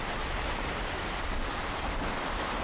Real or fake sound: real